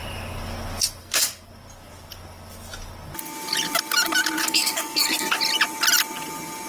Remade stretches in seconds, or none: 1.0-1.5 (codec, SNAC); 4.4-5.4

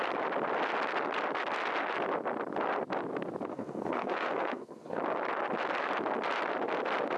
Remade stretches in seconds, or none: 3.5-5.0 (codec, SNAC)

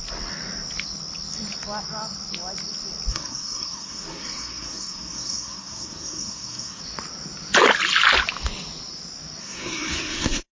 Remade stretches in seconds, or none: 3.1-6.8 (codec, SNAC); 9.4-10.5